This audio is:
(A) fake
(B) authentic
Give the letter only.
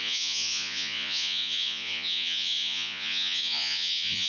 A